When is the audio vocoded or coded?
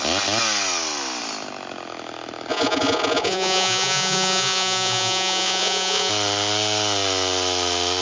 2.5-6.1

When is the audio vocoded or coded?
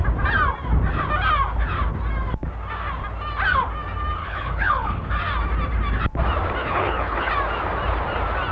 4.2-5.1; 6.6-7.3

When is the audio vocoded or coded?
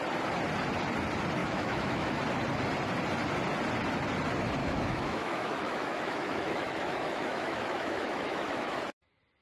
1.4-2.2; 4.6-8.8